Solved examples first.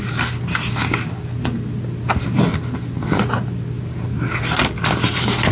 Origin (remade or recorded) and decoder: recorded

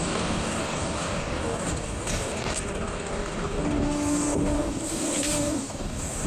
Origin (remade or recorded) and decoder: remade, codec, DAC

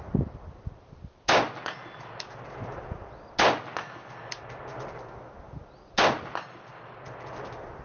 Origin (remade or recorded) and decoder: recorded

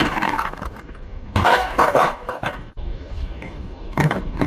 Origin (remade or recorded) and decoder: remade, codec, DAC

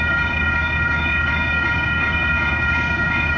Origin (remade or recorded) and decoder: remade, codec, DAC